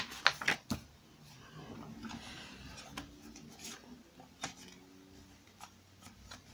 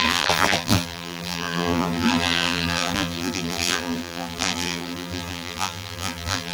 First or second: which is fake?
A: second